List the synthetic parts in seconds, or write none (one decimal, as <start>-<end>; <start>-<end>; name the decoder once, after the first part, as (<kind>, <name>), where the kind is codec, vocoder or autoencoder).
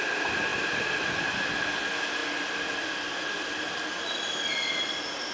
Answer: 0.5-1.5 (vocoder, BigVGAN v2); 2.2-4.8